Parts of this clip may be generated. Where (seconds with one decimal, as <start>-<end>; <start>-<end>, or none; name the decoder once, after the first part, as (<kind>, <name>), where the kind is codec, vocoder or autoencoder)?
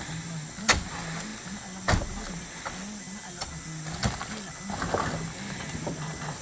none